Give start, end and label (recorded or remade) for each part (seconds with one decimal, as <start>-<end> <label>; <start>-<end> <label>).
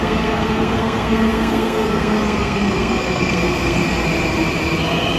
0.0-3.8 remade; 3.8-5.2 recorded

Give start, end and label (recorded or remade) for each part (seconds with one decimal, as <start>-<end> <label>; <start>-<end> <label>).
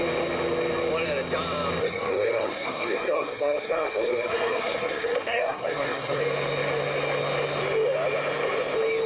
0.0-1.8 recorded; 1.8-6.2 remade; 6.2-9.1 recorded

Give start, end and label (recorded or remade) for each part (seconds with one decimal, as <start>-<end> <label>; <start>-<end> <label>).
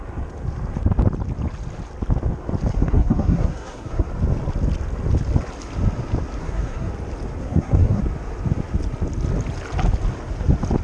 0.0-2.7 recorded; 2.7-4.1 remade; 4.1-6.4 recorded; 6.4-6.9 remade; 6.9-7.4 recorded; 7.4-8.0 remade; 8.0-10.8 recorded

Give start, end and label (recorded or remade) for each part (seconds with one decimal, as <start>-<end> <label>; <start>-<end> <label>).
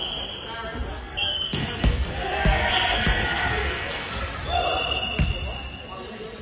0.0-0.9 recorded; 0.9-4.2 remade; 4.2-6.4 recorded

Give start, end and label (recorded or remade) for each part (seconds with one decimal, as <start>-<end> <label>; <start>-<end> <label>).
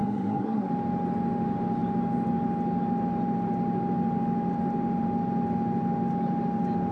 0.0-0.7 remade; 0.7-6.9 recorded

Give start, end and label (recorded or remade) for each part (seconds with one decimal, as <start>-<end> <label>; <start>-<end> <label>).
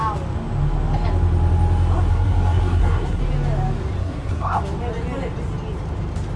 0.0-2.1 recorded; 2.1-3.2 remade; 3.2-4.0 recorded; 4.0-4.6 remade; 4.6-6.4 recorded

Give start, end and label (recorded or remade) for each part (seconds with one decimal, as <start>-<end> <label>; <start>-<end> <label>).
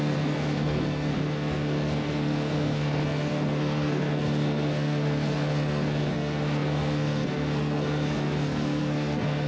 0.0-9.5 remade